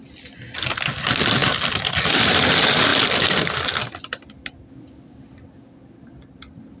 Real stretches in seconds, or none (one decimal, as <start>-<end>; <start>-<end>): 0.0-6.8